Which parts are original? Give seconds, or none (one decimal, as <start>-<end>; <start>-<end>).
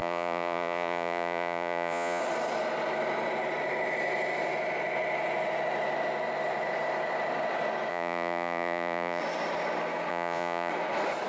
2.2-7.9; 9.2-10.1; 10.7-11.3